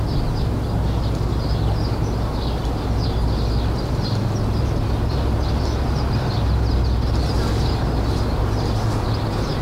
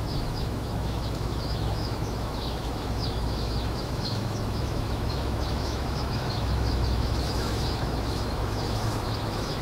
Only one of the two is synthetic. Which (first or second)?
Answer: second